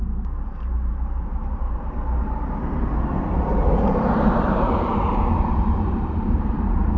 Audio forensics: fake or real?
fake